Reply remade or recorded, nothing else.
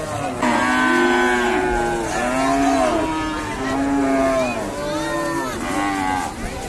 recorded